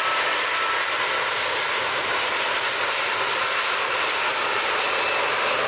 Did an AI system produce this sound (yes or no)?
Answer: no